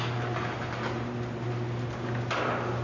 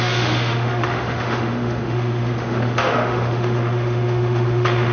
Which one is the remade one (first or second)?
second